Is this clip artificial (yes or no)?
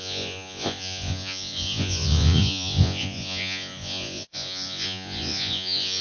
yes